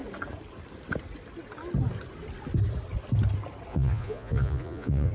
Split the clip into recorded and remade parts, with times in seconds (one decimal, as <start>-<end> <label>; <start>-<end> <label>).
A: 0.0-3.7 recorded; 3.7-5.1 remade